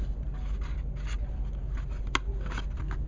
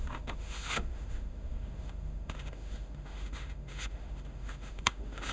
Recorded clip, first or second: first